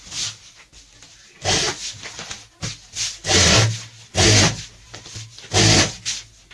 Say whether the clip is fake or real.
real